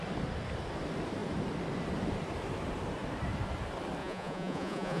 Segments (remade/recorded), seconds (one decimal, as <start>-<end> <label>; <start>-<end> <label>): 0.0-4.0 recorded; 4.0-5.0 remade